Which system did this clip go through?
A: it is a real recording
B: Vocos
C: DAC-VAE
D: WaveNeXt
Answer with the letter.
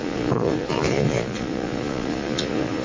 B